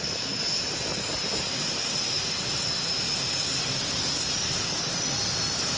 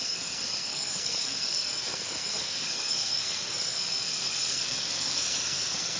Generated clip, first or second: second